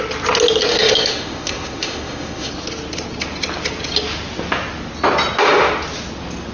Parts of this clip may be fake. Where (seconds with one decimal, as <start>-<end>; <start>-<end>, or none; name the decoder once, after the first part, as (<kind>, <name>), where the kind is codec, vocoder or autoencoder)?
0.7-2.5 (autoencoder, DAC-VAE)